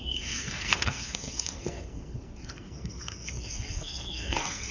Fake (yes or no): yes